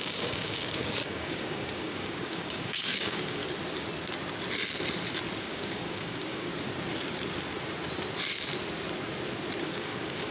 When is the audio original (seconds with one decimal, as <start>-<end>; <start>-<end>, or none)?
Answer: 3.4-5.4; 6.5-9.6